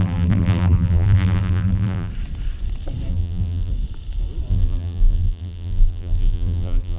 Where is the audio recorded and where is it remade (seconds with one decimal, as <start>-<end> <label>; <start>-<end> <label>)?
0.0-2.1 remade; 2.1-3.1 recorded; 3.1-3.7 remade; 3.7-4.5 recorded; 4.5-7.0 remade